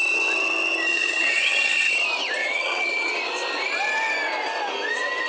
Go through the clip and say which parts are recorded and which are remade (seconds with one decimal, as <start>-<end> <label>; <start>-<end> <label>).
0.0-0.9 recorded; 0.9-1.9 remade; 1.9-2.4 recorded; 2.4-3.1 remade; 3.1-5.3 recorded